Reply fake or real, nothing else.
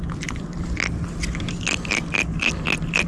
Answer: real